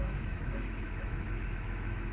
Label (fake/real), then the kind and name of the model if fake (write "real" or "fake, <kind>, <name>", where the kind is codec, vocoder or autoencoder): fake, autoencoder, DAC-VAE